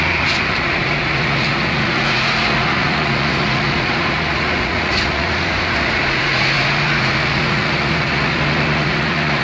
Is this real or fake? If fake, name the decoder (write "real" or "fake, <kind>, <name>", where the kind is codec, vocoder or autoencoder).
fake, vocoder, Vocos